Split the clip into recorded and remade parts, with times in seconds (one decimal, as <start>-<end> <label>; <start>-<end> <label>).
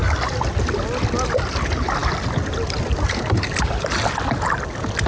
0.0-5.1 recorded